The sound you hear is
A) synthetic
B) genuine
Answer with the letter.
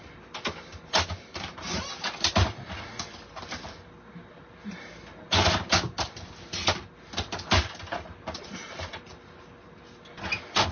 B